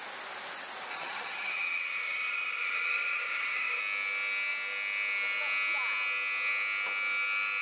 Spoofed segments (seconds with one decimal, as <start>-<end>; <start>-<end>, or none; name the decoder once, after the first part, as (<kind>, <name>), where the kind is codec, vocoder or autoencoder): 0.9-3.8 (vocoder, HiFi-GAN)